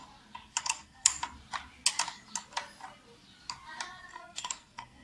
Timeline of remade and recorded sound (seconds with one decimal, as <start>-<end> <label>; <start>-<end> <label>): 0.0-0.6 recorded; 0.6-1.1 remade; 1.1-4.1 recorded; 4.1-5.0 remade